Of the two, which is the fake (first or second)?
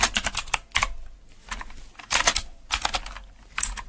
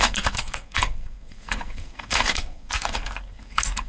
second